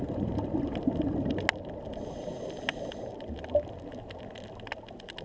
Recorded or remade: recorded